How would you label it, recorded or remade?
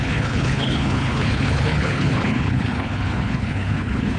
remade